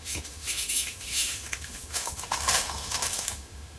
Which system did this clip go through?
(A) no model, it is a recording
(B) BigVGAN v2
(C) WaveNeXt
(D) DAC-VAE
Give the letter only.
D